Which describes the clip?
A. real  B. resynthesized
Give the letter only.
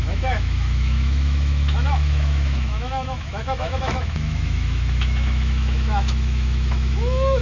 B